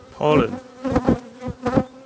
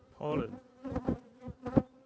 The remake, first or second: second